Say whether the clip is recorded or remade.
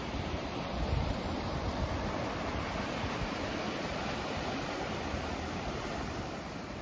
remade